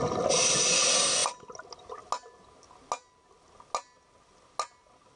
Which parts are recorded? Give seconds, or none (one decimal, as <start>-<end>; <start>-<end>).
0.0-5.2